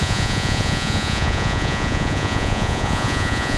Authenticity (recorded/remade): remade